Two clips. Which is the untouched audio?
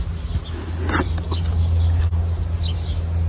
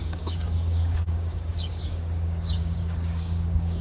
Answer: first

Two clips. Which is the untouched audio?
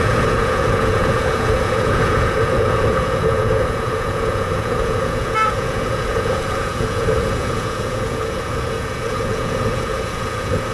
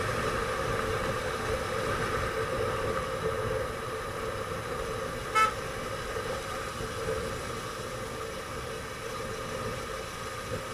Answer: second